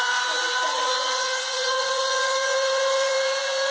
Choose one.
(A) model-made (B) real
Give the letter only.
A